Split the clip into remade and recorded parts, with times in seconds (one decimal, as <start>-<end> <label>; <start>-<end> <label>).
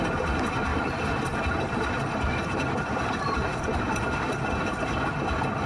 0.0-0.7 recorded; 0.7-3.1 remade; 3.1-3.5 recorded; 3.5-4.0 remade; 4.0-5.7 recorded